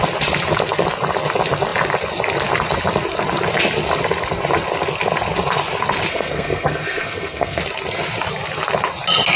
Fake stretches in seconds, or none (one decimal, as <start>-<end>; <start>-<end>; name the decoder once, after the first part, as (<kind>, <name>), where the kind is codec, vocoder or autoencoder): 6.1-7.6 (codec, SNAC)